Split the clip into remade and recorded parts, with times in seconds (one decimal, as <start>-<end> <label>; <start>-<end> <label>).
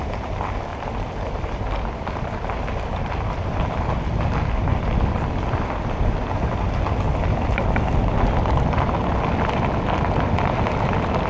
0.0-0.7 recorded; 0.7-3.9 remade; 3.9-11.3 recorded